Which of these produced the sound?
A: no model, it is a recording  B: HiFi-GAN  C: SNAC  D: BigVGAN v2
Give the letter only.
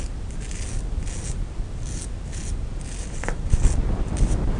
A